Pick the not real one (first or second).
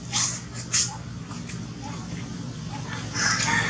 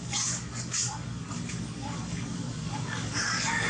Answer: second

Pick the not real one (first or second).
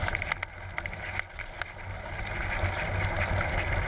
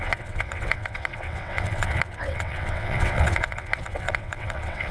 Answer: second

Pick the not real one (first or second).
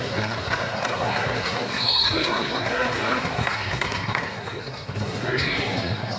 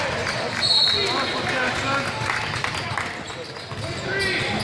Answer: first